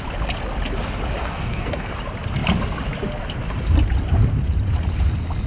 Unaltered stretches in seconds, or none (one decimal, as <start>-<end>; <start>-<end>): 0.0-1.2; 1.9-5.5